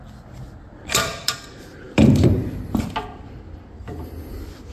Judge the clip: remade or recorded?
recorded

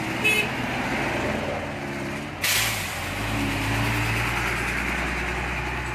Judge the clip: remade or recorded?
recorded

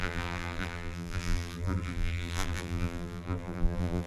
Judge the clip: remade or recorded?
remade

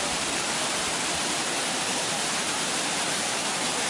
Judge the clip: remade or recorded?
remade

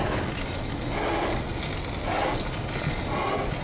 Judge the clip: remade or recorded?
recorded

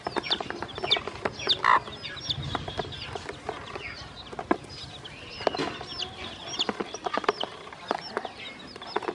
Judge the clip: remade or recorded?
recorded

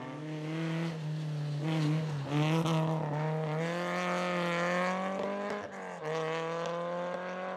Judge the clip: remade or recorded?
recorded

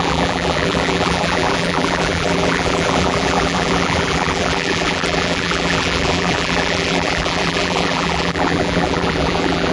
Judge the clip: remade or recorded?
remade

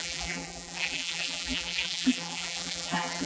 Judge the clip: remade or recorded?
remade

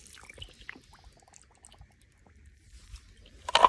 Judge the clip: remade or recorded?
recorded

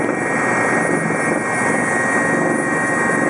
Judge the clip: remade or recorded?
recorded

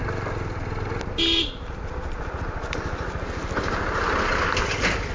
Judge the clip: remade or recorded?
recorded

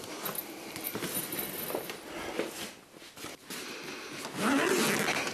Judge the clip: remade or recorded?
recorded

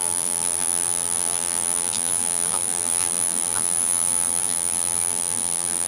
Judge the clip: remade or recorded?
remade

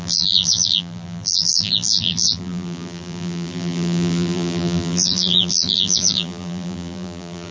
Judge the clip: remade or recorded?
remade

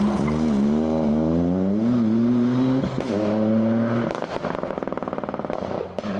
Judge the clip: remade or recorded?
recorded